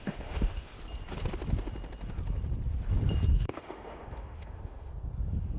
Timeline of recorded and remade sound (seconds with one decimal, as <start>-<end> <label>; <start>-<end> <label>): 0.0-0.7 remade; 0.7-3.3 recorded; 3.3-4.9 remade; 4.9-5.6 recorded